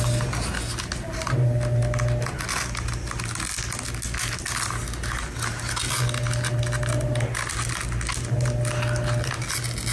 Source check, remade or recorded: recorded